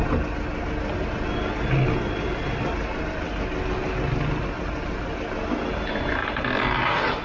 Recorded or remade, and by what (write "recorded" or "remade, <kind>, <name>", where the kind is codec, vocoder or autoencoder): recorded